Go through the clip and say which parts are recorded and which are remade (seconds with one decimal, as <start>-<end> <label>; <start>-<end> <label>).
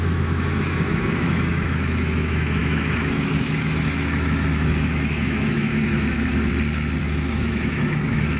0.0-6.5 remade; 6.5-7.0 recorded; 7.0-8.4 remade